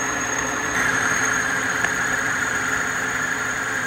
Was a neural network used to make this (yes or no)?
yes